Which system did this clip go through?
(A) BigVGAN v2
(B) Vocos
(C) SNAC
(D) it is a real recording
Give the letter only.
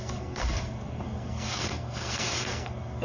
C